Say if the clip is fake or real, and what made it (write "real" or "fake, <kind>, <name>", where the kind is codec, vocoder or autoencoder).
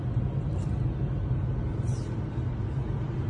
real